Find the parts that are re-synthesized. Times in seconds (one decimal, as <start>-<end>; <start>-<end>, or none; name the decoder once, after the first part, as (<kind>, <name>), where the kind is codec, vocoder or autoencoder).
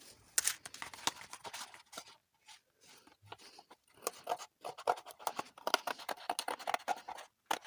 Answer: none